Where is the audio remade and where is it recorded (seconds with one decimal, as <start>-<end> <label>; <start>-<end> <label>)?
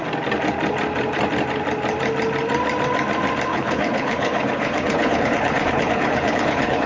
0.0-3.5 recorded; 3.5-6.9 remade